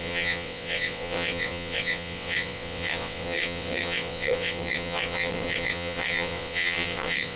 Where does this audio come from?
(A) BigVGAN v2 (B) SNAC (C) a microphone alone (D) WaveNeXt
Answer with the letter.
D